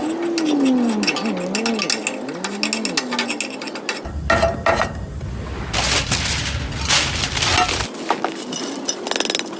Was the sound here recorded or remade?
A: recorded